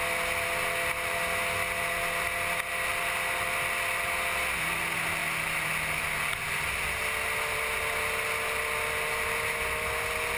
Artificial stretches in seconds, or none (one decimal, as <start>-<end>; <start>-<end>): none